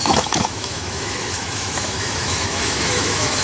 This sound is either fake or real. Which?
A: fake